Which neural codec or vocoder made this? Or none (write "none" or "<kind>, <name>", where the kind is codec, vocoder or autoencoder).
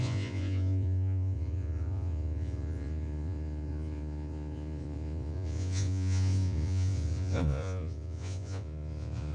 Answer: vocoder, Vocos